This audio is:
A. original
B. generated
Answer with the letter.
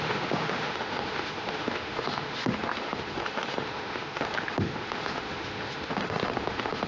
B